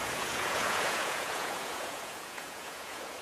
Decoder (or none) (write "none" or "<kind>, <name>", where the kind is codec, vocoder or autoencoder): vocoder, Vocos